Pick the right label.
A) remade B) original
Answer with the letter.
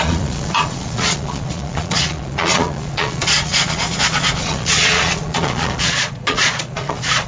A